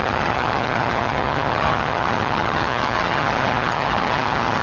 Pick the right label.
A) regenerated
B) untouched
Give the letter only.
A